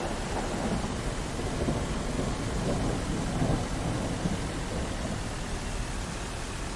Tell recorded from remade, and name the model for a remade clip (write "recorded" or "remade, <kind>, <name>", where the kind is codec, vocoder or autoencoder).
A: recorded